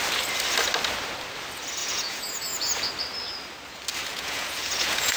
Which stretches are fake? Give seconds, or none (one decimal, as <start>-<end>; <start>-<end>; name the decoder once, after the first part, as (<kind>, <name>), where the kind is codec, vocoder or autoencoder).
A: 1.8-2.9 (vocoder, Vocos); 4.1-5.2

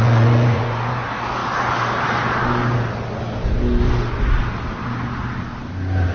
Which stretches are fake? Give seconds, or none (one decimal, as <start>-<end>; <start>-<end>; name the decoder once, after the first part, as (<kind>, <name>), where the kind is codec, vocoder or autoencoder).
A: 0.0-0.9 (vocoder, Vocos)

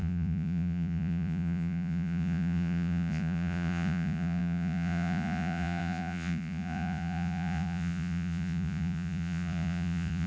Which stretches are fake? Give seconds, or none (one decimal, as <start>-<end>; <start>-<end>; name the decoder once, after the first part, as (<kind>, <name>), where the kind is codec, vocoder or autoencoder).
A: 0.0-10.3 (vocoder, Vocos)